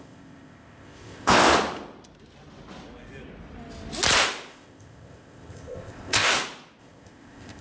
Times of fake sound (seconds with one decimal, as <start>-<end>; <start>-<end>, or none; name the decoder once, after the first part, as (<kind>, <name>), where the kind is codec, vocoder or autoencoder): 0.0-1.5 (codec, ZipCodec); 4.5-6.3; 6.8-7.6